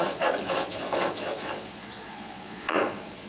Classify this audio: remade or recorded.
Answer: remade